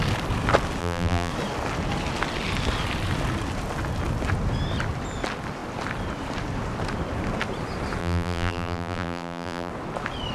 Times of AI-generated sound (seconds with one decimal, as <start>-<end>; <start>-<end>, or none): 0.8-1.3; 8.0-9.7